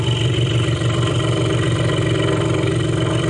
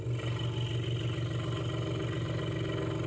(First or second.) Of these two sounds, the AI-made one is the first